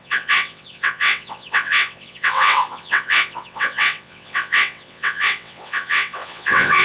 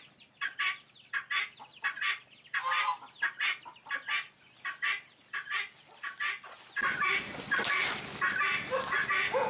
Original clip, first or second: second